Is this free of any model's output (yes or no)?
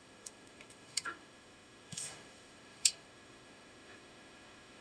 no